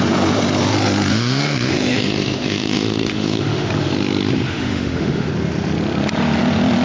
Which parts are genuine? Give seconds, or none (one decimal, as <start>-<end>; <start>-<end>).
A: 0.0-1.1; 3.7-4.5; 5.3-6.8